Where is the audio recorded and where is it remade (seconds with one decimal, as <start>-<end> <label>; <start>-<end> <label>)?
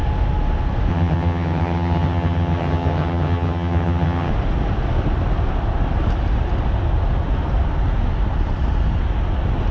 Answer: 0.0-0.9 recorded; 0.9-4.3 remade; 4.3-9.7 recorded